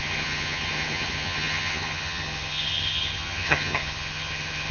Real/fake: fake